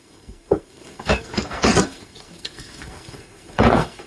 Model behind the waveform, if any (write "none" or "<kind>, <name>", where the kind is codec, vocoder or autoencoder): codec, SNAC